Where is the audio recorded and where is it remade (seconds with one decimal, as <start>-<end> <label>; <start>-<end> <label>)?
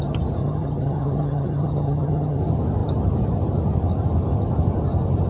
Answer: 0.0-0.4 recorded; 0.4-2.4 remade; 2.4-5.3 recorded